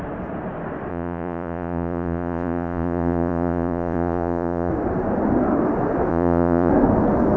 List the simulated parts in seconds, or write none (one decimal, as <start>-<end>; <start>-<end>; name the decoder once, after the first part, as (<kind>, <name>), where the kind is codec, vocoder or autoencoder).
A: 0.9-4.7 (vocoder, Vocos); 6.1-6.7

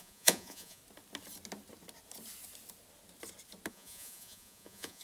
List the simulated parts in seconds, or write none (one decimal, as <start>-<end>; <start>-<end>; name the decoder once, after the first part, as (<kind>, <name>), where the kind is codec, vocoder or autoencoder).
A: 0.0-0.8 (vocoder, Vocos); 3.7-5.0